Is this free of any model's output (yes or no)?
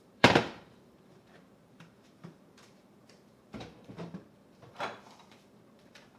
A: no